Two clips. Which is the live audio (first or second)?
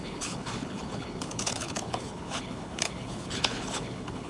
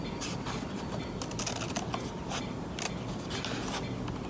second